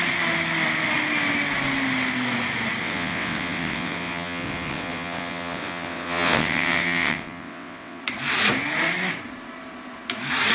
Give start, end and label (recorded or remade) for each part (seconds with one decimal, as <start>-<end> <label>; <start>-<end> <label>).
0.0-2.8 recorded; 2.8-8.0 remade; 8.0-10.5 recorded